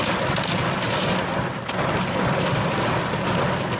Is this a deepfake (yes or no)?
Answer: no